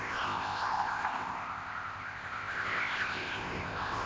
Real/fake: fake